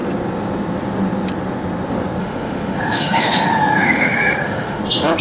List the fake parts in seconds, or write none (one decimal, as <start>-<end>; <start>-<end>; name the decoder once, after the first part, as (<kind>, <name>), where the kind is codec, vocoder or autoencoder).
2.2-4.8 (autoencoder, DAC-VAE)